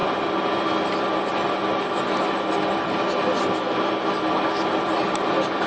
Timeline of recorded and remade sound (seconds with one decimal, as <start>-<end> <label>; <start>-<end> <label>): 0.0-5.7 recorded

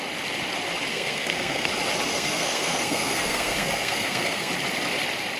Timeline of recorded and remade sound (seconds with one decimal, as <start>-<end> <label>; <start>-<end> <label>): 0.0-0.9 recorded; 0.9-1.7 remade; 1.7-2.1 recorded; 2.1-4.5 remade; 4.5-5.4 recorded

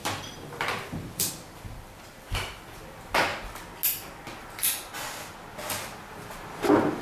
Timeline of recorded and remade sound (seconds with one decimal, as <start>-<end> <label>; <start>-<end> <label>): 0.0-3.3 remade; 3.3-5.8 recorded; 5.8-7.0 remade